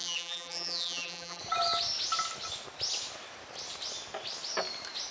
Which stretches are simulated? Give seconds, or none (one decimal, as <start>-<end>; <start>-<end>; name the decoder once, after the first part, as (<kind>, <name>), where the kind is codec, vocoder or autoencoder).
0.0-1.4 (vocoder, BigVGAN v2)